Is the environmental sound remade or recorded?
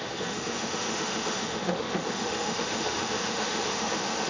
remade